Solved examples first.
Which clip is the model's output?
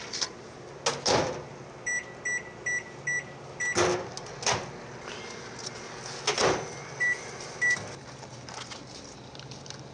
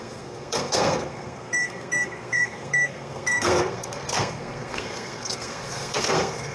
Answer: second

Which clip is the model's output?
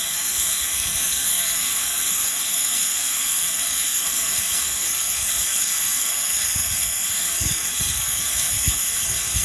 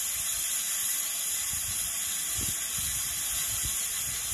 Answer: first